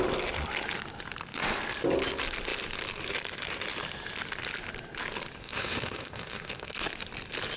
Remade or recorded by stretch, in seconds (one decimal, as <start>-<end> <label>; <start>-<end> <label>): 0.0-5.4 recorded; 5.4-6.7 remade; 6.7-7.6 recorded